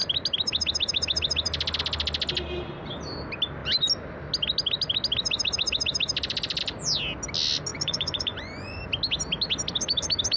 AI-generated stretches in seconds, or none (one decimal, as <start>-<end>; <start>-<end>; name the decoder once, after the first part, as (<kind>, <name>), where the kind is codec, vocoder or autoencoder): 7.7-8.8 (vocoder, Vocos)